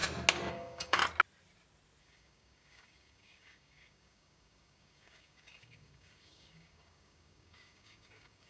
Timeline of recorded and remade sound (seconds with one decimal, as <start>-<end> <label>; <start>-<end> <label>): 0.0-0.5 recorded; 0.5-1.0 remade; 1.0-2.0 recorded; 2.0-8.5 remade